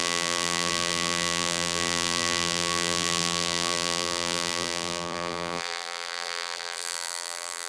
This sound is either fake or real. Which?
fake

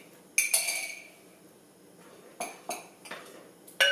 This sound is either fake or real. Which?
real